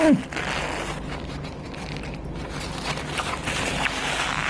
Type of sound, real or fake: real